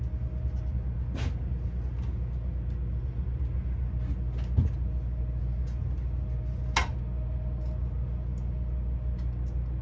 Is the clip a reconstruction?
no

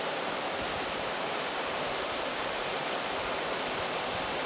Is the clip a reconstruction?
yes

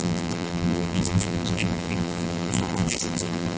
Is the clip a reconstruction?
yes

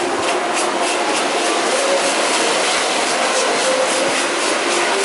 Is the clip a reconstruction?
no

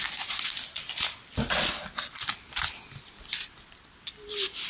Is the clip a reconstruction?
no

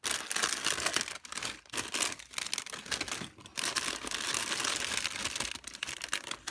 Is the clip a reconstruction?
no